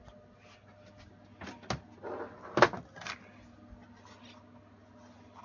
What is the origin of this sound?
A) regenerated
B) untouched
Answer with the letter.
B